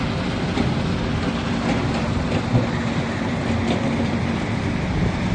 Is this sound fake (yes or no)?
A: no